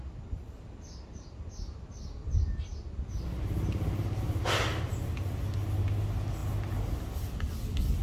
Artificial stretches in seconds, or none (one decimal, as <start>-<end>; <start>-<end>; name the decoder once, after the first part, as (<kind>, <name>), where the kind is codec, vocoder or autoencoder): none